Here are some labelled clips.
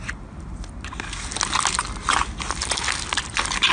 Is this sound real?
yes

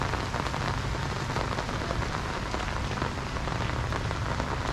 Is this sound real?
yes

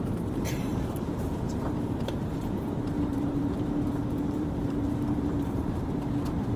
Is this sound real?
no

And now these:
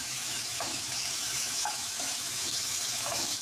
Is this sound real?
no